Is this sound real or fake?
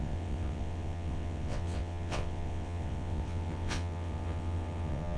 fake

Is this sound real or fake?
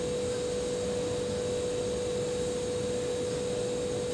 real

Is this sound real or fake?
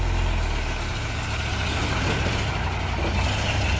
real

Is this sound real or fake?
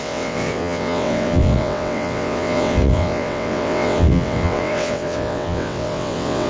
fake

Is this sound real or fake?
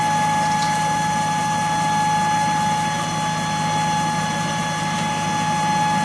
real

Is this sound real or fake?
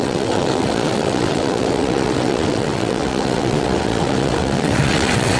fake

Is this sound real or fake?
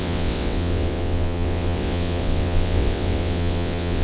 fake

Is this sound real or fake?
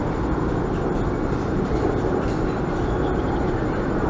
real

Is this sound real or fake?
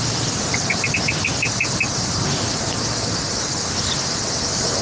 real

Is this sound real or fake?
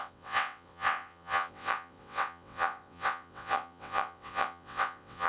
fake